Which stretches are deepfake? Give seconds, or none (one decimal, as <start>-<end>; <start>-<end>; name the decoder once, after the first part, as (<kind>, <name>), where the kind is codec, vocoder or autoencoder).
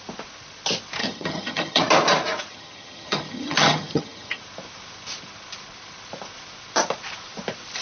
1.0-1.8 (vocoder, HiFi-GAN); 2.5-4.4